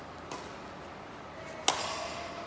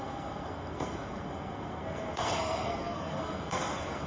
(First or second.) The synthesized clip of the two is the second